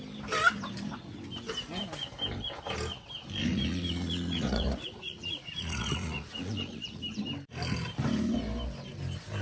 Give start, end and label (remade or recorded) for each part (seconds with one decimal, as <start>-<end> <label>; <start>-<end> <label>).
0.0-3.4 recorded; 3.4-7.0 remade; 7.0-9.4 recorded